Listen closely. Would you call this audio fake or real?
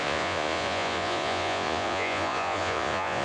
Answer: fake